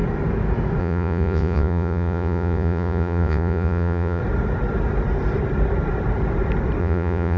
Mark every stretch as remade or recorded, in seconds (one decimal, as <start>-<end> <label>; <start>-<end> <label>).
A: 0.0-0.8 recorded; 0.8-4.2 remade; 4.2-6.8 recorded; 6.8-7.4 remade